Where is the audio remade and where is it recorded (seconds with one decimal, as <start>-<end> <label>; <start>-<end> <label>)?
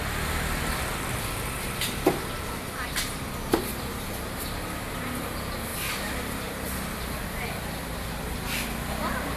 0.0-9.4 recorded